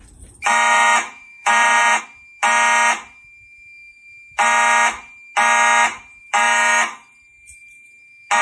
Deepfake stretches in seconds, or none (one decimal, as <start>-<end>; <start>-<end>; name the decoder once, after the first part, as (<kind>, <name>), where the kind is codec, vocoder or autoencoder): 0.7-2.0 (vocoder, Vocos)